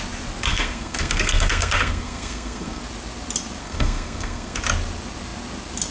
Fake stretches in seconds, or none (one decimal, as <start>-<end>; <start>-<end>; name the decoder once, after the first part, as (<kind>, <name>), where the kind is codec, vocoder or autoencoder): 0.5-2.8 (codec, SNAC); 3.6-4.6